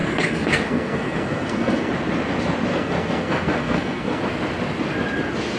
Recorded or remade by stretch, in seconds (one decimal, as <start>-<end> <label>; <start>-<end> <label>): 0.0-1.9 remade; 1.9-2.7 recorded; 2.7-4.2 remade; 4.2-5.6 recorded